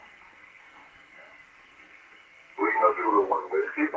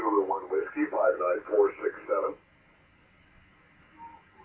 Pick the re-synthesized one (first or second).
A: first